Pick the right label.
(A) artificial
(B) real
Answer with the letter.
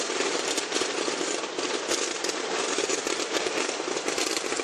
A